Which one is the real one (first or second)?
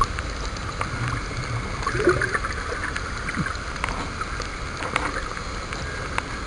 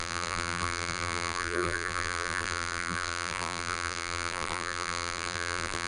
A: first